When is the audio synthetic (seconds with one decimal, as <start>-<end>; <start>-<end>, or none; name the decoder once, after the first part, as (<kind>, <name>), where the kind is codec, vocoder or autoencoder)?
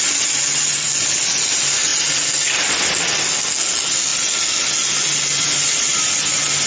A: none